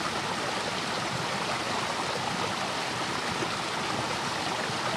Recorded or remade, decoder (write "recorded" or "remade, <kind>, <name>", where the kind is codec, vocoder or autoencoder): recorded